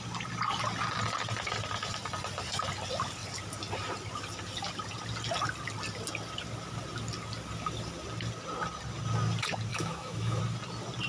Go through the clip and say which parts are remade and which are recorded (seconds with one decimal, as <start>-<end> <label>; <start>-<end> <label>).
0.0-9.7 recorded; 9.7-10.4 remade; 10.4-11.1 recorded